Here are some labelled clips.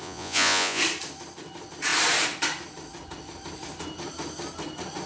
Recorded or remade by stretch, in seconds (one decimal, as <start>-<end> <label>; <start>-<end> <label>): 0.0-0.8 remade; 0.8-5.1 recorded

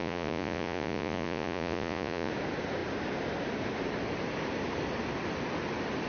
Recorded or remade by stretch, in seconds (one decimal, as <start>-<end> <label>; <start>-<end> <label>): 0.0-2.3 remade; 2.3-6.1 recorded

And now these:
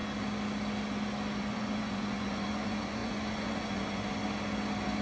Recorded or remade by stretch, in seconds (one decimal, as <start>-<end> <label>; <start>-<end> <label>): 0.0-1.4 recorded; 1.4-4.2 remade; 4.2-5.0 recorded